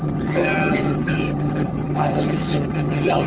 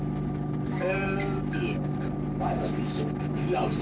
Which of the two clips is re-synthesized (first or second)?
first